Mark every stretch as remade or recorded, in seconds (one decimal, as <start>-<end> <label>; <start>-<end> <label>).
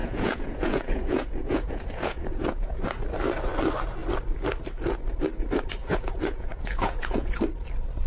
0.0-2.8 remade; 2.8-5.9 recorded; 5.9-7.4 remade; 7.4-8.1 recorded